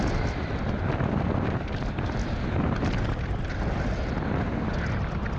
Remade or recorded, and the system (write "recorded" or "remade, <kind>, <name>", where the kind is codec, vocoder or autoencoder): recorded